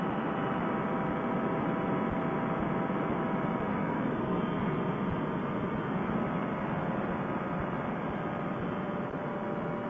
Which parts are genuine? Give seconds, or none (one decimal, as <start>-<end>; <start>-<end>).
0.0-3.7; 4.4-9.9